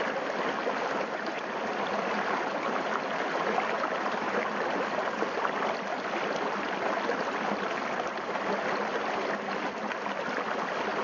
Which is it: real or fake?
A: real